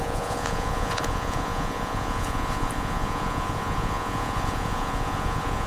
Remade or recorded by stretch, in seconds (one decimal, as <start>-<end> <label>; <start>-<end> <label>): 0.0-5.7 remade